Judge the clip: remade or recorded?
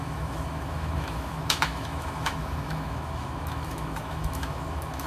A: remade